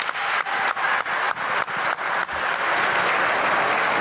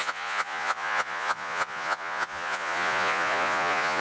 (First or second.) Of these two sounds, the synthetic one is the second